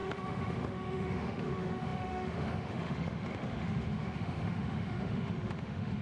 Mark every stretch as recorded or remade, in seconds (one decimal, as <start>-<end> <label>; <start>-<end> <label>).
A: 0.0-6.0 remade